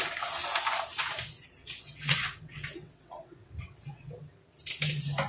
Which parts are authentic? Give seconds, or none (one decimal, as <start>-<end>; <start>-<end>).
0.0-1.6; 4.2-5.3